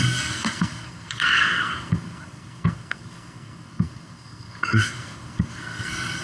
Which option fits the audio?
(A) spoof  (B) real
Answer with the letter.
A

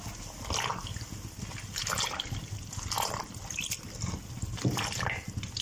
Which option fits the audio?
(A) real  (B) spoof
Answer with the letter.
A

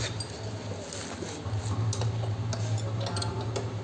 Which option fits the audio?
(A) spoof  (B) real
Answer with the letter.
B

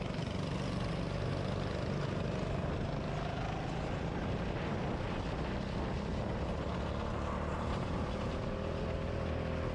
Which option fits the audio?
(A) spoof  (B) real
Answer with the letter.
B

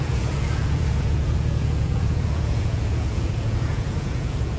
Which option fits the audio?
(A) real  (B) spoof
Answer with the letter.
B